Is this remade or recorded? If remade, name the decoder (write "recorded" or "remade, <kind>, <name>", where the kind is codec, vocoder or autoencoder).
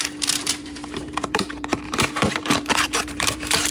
remade, vocoder, BigVGAN v2